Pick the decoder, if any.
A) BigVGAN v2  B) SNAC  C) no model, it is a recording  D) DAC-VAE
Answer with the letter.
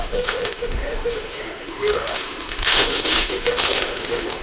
D